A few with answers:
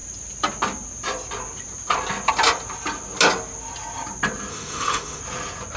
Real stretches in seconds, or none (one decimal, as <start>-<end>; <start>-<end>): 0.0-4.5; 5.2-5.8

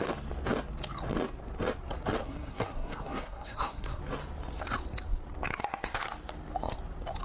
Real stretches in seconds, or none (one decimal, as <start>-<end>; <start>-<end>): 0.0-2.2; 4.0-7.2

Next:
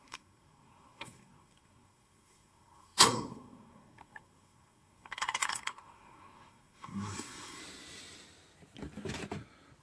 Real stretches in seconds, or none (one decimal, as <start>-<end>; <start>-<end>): 7.6-9.8

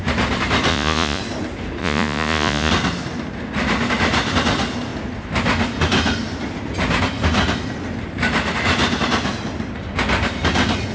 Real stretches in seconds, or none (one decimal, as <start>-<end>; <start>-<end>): 0.0-0.7; 1.2-1.8; 2.7-10.9

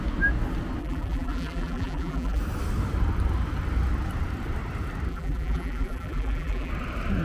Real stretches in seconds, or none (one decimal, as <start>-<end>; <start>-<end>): 0.0-0.8; 2.4-5.1; 6.7-7.2

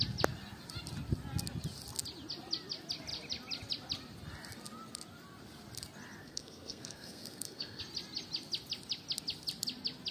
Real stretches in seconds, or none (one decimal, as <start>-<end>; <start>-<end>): 0.0-6.2; 7.8-10.1

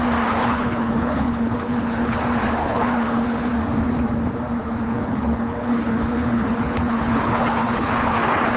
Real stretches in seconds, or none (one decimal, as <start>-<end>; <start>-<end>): 0.0-0.4; 2.2-2.6; 3.5-4.6

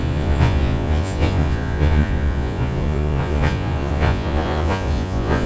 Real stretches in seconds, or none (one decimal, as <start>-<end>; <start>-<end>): none